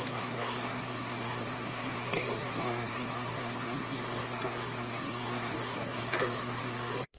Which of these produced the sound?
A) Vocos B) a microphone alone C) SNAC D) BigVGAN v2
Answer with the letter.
C